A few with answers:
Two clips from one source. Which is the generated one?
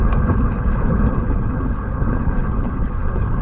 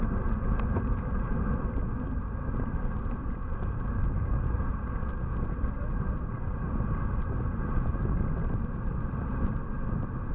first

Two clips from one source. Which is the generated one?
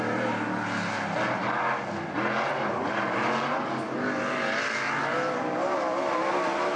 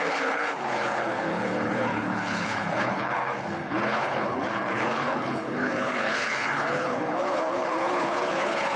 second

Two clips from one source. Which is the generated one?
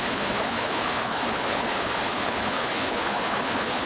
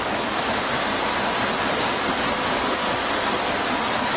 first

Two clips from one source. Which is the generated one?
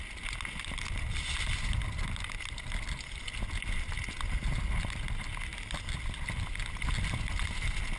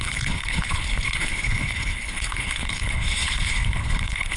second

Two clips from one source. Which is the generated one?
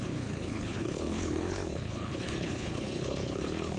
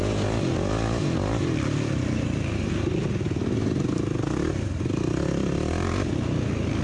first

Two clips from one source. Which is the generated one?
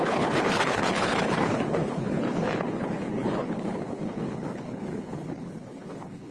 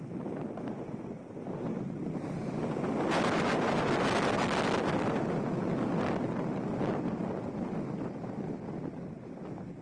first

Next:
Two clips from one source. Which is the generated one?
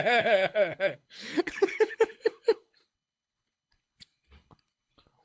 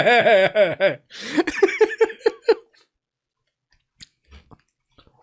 first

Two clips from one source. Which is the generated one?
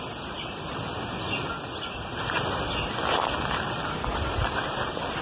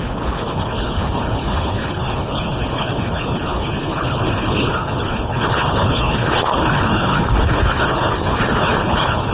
second